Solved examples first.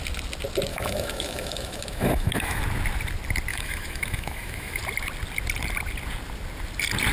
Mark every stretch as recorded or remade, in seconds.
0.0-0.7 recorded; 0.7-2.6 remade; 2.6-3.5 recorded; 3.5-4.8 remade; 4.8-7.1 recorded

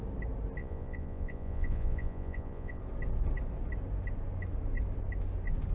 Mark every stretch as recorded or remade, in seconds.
0.0-0.6 recorded; 0.6-2.8 remade; 2.8-5.7 recorded